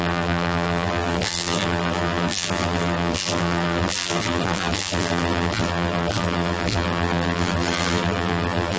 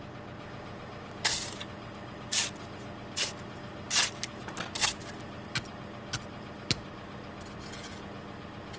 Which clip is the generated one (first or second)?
first